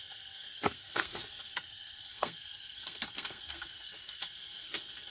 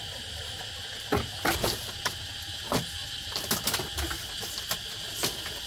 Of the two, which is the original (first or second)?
second